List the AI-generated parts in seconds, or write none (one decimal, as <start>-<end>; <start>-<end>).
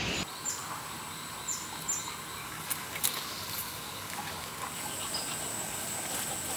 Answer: 2.4-4.5; 5.5-6.1